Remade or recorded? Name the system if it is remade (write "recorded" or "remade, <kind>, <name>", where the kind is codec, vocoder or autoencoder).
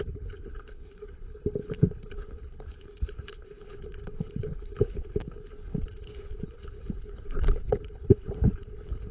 remade, codec, HILCodec